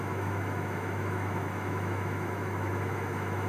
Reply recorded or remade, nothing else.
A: remade